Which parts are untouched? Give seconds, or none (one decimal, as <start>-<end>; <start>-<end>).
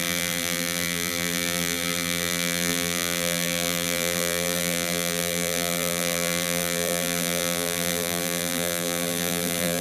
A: none